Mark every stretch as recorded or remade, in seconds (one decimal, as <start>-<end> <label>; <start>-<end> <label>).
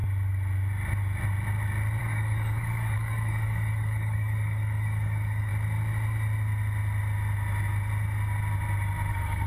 0.0-2.0 recorded; 2.0-5.5 remade; 5.5-9.1 recorded; 9.1-9.5 remade